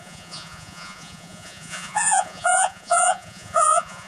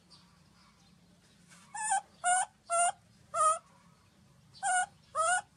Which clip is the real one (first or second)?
second